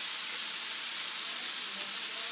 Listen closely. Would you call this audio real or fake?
fake